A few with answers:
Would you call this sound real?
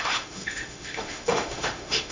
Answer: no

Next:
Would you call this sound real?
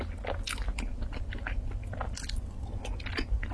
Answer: yes